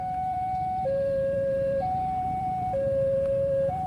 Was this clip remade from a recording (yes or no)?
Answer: yes